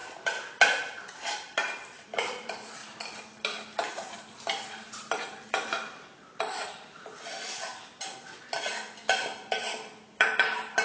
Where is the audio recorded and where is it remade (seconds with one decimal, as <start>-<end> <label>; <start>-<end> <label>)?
0.0-1.1 recorded; 1.1-2.8 remade; 2.8-3.9 recorded; 3.9-7.7 remade; 7.7-9.9 recorded; 9.9-10.8 remade